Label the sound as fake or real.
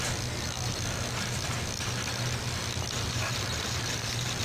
real